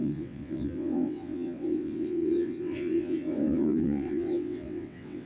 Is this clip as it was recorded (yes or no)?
no